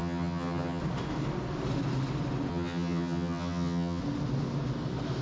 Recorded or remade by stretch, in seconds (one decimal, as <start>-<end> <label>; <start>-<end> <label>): 0.0-0.8 remade; 0.8-2.5 recorded; 2.5-4.0 remade; 4.0-5.2 recorded

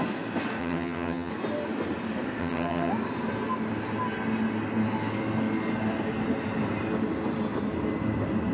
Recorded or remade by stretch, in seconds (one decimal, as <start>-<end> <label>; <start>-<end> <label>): 0.0-0.6 recorded; 0.6-1.3 remade; 1.3-2.4 recorded; 2.4-2.9 remade; 2.9-8.5 recorded

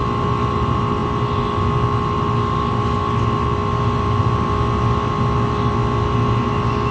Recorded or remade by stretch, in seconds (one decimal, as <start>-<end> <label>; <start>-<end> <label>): 0.0-6.9 recorded

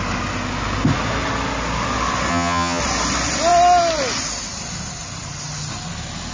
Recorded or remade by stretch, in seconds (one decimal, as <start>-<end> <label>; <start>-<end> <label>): 0.0-2.3 recorded; 2.3-2.8 remade; 2.8-6.3 recorded

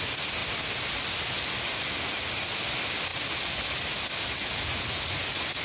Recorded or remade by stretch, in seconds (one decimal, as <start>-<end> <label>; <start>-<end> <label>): 0.0-5.6 recorded

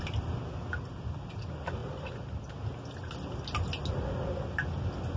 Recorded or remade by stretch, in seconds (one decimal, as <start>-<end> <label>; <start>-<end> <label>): 0.0-5.2 recorded

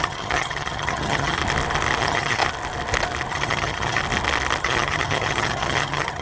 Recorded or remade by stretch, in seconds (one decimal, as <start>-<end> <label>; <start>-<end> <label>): 0.0-1.4 remade; 1.4-2.0 recorded; 2.0-2.4 remade; 2.4-3.3 recorded; 3.3-4.0 remade; 4.0-4.6 recorded; 4.6-6.2 remade